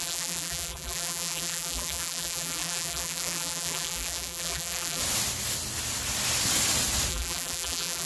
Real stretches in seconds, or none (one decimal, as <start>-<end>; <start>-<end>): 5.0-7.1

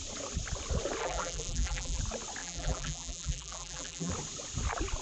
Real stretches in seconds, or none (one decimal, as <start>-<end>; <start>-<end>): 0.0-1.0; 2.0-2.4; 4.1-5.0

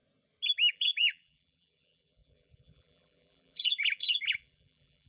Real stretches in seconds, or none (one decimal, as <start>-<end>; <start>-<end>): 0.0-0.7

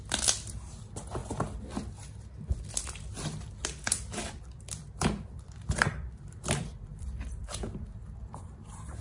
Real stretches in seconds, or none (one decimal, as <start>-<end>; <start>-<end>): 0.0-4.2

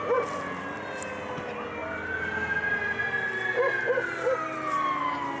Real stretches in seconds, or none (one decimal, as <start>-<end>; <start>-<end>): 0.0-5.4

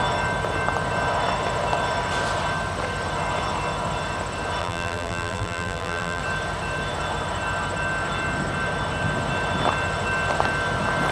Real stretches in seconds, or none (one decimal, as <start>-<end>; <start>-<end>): 0.0-4.6; 6.2-11.1

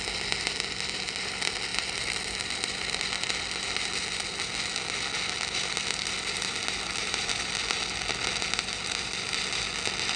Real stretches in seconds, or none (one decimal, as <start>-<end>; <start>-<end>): 0.0-7.0; 7.5-10.2